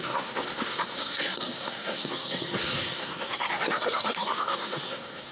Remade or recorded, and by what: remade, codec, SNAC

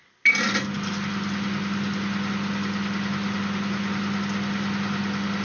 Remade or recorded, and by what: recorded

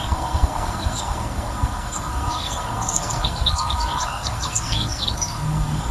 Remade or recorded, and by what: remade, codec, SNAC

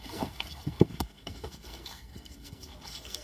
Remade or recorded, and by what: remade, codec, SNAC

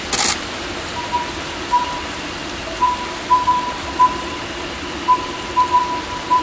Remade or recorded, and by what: recorded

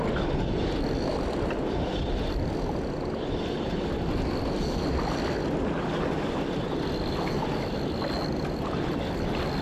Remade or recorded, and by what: recorded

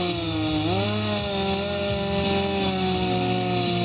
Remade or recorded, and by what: recorded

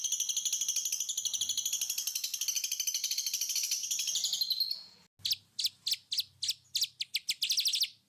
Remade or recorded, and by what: recorded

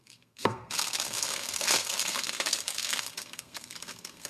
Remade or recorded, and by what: remade, codec, SNAC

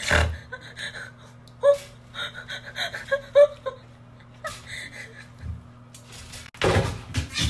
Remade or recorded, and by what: recorded